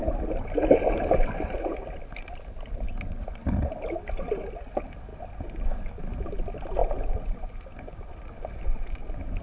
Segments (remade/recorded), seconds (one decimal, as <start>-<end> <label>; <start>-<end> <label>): 0.0-9.4 recorded